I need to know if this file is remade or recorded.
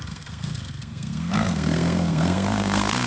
remade